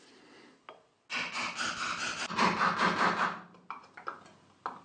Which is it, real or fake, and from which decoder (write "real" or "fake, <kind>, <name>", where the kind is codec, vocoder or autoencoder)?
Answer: real